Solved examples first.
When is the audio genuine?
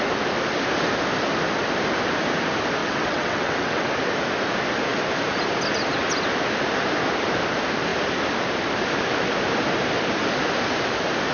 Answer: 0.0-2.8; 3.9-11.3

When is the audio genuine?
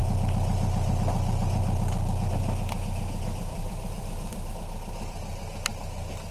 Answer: 0.0-3.5; 4.5-6.3